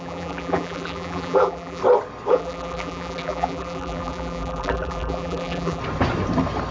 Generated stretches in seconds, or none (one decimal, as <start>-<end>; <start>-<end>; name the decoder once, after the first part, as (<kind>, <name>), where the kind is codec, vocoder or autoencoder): 0.0-1.8 (vocoder, BigVGAN v2); 2.3-5.8